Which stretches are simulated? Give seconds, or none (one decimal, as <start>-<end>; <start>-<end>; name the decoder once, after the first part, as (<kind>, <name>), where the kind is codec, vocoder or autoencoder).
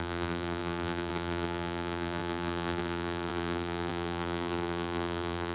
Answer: 0.0-5.5 (vocoder, BigVGAN v2)